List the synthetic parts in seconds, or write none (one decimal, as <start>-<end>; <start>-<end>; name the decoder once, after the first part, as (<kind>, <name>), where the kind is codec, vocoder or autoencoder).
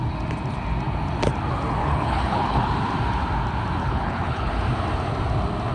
1.8-2.7 (codec, HILCodec); 3.8-4.5